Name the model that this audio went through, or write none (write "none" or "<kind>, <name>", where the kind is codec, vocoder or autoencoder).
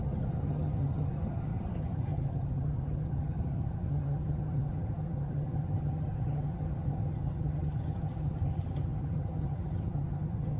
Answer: vocoder, HiFi-GAN